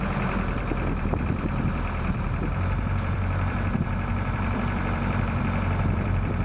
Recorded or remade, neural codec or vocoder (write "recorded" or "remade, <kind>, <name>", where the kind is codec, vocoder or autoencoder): remade, vocoder, BigVGAN v2